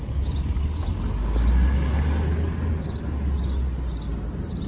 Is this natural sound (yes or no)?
yes